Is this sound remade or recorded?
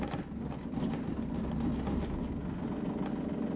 recorded